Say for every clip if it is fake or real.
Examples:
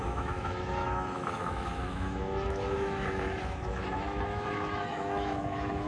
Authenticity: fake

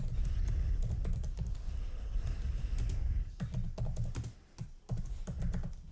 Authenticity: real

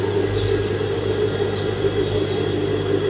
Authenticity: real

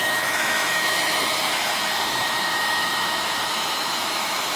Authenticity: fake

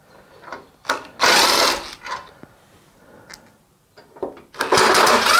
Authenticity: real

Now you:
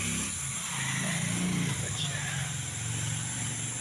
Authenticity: real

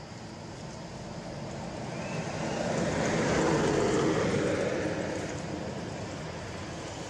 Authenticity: real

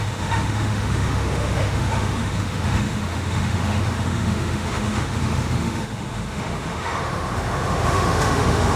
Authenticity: fake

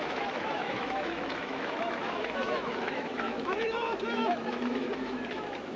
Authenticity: fake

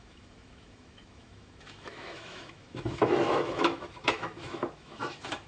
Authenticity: fake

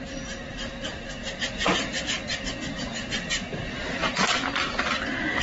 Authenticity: real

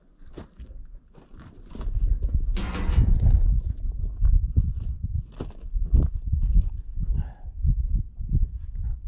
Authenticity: real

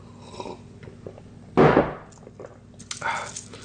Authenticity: real